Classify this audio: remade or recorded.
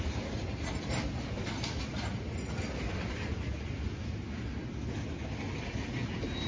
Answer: recorded